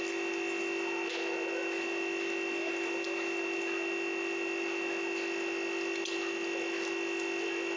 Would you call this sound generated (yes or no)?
no